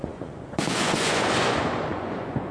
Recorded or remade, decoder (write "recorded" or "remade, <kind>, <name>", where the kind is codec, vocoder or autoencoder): remade, vocoder, Vocos